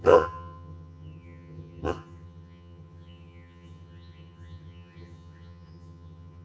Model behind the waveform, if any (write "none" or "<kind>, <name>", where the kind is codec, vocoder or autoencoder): vocoder, HiFi-GAN